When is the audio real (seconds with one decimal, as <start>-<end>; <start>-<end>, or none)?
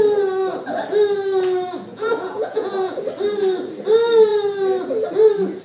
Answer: 0.0-1.9; 3.0-5.6